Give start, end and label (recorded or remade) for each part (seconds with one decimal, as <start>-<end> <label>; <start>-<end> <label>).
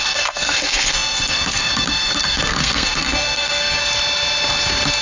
0.0-3.8 remade; 3.8-5.0 recorded